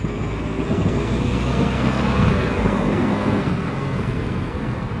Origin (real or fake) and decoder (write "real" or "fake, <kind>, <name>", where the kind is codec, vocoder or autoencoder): fake, codec, SNAC